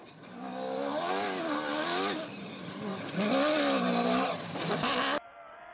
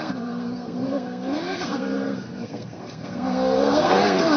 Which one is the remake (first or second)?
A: second